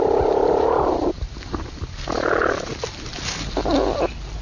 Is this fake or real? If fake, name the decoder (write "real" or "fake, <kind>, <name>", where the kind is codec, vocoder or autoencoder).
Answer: real